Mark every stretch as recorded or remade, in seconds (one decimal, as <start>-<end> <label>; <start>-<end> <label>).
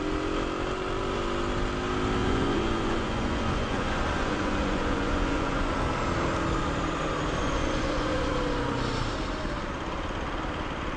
0.0-2.2 recorded; 2.2-5.7 remade; 5.7-7.4 recorded; 7.4-8.3 remade; 8.3-11.0 recorded